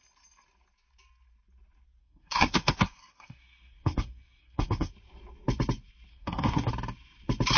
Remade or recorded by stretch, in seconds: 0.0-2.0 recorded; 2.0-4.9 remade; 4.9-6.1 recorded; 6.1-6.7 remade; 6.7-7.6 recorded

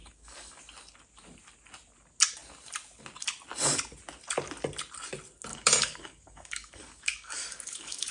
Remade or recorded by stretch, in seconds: 0.0-0.6 remade; 0.6-5.5 recorded; 5.5-8.1 remade

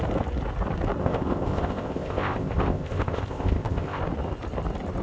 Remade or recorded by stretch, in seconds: 0.0-1.0 recorded; 1.0-4.0 remade; 4.0-5.0 recorded

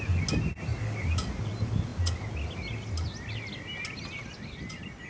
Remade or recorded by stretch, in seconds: 0.0-5.1 recorded

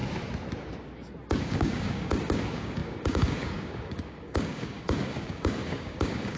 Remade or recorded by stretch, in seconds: 0.0-1.4 recorded; 1.4-6.4 remade

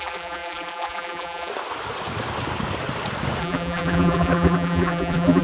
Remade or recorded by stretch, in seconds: 0.0-1.5 remade; 1.5-3.4 recorded; 3.4-5.4 remade